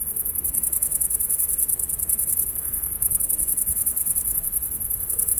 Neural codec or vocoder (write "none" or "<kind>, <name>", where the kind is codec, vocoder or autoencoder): codec, SNAC